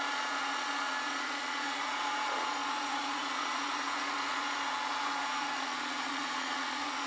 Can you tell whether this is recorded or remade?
remade